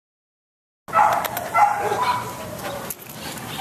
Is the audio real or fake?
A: real